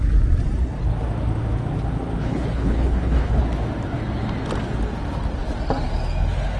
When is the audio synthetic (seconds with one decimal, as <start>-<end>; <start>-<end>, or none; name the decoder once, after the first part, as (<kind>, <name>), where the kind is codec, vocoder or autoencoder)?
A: 2.2-3.4 (codec, HILCodec)

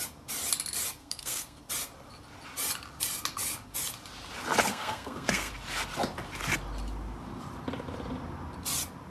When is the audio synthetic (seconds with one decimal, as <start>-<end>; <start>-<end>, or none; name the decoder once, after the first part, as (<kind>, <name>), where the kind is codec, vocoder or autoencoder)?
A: 1.0-1.6 (codec, SNAC); 4.7-5.5

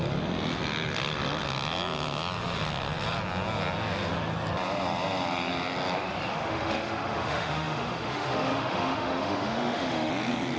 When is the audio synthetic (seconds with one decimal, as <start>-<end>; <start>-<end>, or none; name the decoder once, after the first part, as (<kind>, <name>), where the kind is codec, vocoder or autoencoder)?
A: 6.3-10.1 (autoencoder, DAC-VAE)